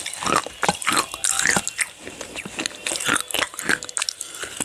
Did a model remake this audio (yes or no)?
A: no